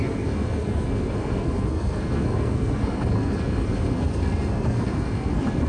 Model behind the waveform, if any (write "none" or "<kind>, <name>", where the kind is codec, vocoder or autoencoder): codec, SNAC